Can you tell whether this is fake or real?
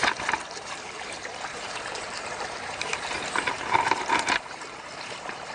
fake